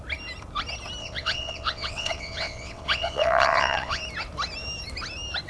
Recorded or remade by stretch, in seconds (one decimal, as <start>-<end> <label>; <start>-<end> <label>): 0.0-1.0 recorded; 1.0-4.0 remade; 4.0-5.5 recorded